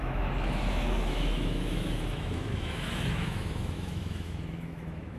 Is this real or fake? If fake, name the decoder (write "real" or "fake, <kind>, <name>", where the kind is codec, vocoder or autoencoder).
fake, autoencoder, DAC-VAE